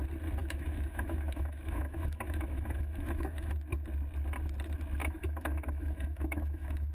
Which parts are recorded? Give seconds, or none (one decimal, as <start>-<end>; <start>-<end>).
0.0-0.4; 3.5-5.0